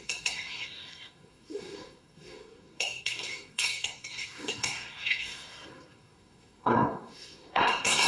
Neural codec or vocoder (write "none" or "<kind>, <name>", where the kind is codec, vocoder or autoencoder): codec, SNAC